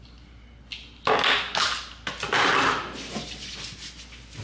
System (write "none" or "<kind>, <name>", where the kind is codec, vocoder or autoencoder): none